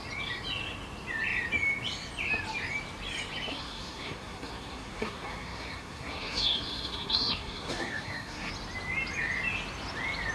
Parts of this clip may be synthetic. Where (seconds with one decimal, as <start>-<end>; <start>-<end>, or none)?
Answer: 3.5-8.5